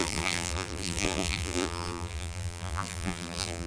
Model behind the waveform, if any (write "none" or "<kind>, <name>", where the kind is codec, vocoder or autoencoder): vocoder, BigVGAN v2